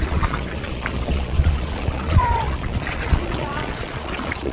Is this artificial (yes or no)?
yes